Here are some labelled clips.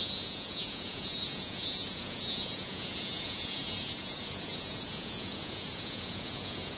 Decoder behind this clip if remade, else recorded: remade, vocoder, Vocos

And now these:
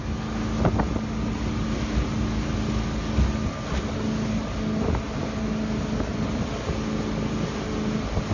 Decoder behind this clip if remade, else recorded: recorded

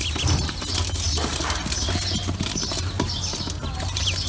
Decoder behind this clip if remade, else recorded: recorded